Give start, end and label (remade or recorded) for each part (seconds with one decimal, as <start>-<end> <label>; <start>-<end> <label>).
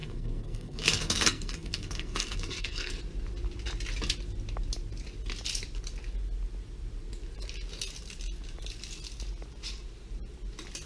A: 0.0-3.0 remade; 3.0-10.9 recorded